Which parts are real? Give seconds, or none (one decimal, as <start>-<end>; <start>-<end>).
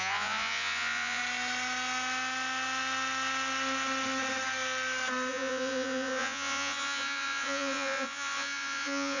1.2-5.3